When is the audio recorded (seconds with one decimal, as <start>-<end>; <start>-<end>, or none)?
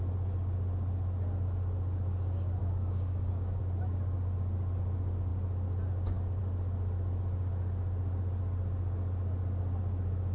0.0-2.6; 3.6-10.3